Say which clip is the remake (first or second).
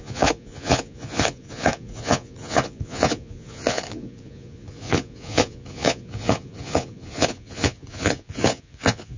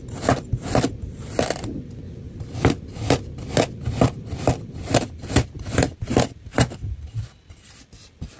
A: first